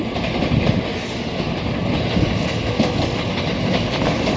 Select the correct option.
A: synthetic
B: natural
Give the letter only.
B